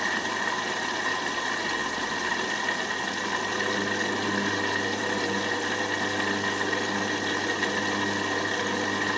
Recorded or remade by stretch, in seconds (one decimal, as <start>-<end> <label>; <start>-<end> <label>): 0.0-9.2 recorded